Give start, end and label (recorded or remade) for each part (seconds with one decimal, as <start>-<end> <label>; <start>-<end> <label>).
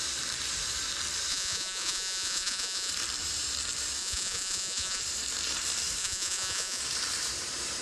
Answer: 0.0-1.3 recorded; 1.3-2.9 remade; 2.9-4.0 recorded; 4.0-5.0 remade; 5.0-6.0 recorded; 6.0-6.8 remade; 6.8-7.8 recorded